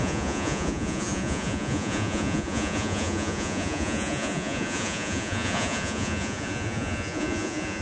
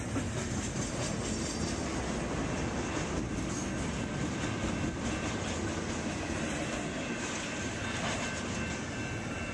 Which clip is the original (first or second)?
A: second